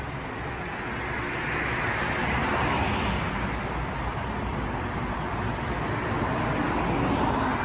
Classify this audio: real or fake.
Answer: real